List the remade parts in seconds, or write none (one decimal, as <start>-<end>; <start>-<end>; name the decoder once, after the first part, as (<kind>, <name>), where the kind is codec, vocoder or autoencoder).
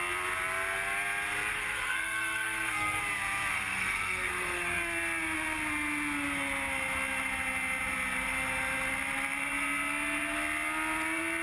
1.5-3.0 (codec, SNAC); 3.5-4.8